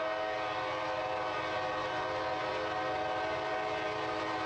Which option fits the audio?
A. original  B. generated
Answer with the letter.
A